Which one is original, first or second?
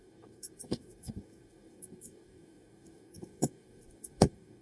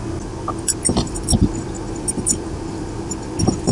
second